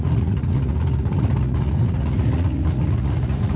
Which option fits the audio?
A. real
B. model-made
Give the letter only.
B